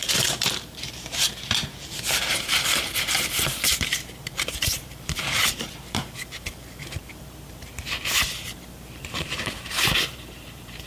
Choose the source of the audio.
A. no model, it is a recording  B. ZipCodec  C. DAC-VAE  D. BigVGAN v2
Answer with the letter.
D